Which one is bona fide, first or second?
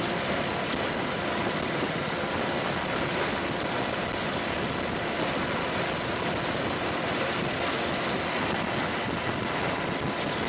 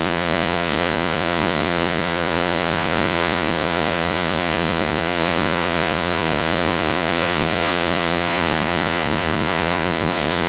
first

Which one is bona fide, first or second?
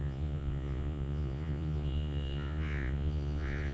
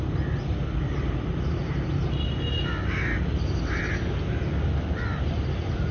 second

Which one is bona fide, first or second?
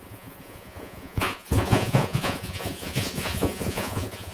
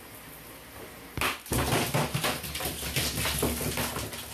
second